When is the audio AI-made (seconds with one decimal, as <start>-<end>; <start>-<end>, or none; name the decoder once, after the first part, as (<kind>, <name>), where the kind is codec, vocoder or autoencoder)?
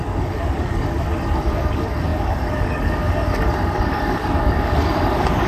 0.0-5.5 (codec, DAC)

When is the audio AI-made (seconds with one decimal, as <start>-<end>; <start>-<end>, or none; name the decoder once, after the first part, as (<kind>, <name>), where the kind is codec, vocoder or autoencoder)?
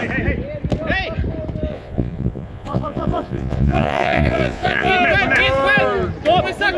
1.7-4.9 (vocoder, Vocos)